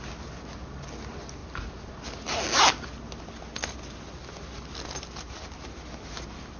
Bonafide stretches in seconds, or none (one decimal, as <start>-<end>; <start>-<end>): 0.0-6.6